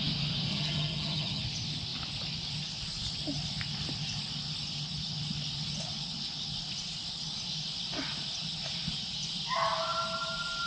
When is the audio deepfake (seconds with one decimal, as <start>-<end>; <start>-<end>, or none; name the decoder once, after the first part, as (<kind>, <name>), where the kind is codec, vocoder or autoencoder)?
0.5-1.4 (vocoder, HiFi-GAN)